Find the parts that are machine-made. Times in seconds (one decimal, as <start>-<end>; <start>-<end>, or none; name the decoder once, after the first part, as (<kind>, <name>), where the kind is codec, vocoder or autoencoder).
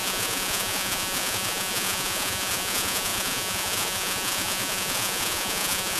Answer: 0.0-6.0 (vocoder, Vocos)